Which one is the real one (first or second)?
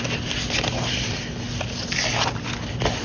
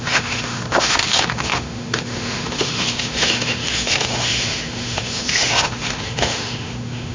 first